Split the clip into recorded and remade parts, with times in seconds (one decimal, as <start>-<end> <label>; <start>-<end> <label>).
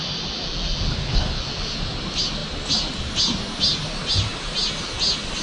0.0-0.9 recorded; 0.9-1.4 remade; 1.4-5.4 recorded